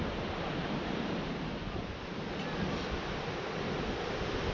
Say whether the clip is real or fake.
real